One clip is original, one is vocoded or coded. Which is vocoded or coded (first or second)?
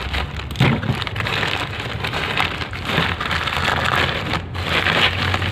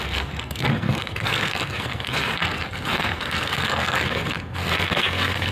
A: second